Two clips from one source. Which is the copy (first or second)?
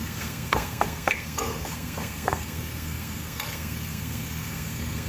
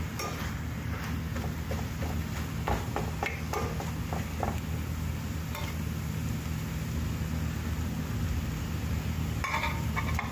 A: first